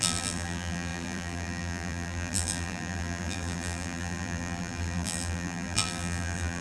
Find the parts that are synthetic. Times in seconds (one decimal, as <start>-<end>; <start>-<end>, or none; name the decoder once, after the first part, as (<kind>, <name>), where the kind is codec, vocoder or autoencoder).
0.0-6.6 (vocoder, BigVGAN v2)